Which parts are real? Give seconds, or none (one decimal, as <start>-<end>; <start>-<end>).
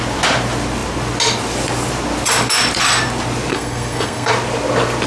0.0-3.5; 4.3-5.1